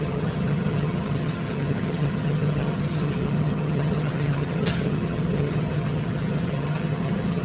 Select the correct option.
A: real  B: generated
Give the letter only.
B